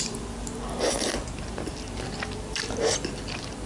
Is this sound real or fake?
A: real